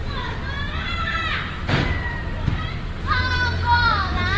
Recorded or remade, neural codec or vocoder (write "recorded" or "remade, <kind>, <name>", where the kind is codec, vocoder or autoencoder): remade, vocoder, BigVGAN v2